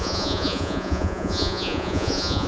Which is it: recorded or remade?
remade